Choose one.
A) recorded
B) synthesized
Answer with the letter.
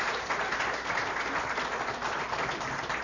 A